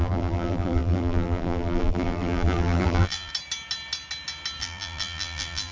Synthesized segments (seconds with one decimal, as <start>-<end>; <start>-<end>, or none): 0.0-3.3; 4.6-5.7